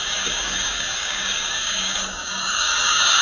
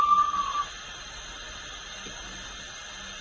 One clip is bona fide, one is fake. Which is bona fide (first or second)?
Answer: second